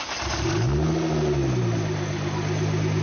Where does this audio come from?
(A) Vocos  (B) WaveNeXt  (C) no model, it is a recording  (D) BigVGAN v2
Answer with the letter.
C